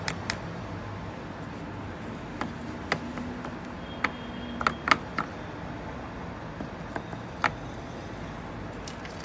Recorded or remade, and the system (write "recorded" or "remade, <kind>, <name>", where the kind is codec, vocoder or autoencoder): recorded